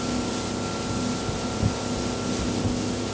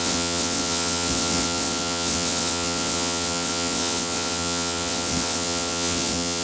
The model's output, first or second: second